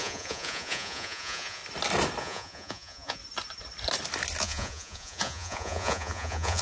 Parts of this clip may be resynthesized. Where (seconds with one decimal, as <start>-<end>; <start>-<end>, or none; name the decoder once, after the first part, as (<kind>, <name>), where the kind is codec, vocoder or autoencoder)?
0.0-1.6 (vocoder, Vocos); 2.2-3.2; 4.4-6.6